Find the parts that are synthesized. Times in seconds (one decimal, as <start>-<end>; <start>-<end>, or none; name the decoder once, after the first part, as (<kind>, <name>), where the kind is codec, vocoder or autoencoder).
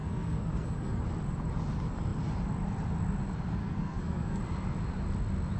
0.0-1.0 (codec, SNAC); 3.6-4.4